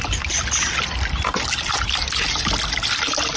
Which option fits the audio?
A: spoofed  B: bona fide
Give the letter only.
B